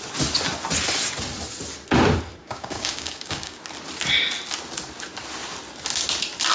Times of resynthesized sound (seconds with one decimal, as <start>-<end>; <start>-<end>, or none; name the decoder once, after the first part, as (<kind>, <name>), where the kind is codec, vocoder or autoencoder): 2.4-3.6 (codec, DAC)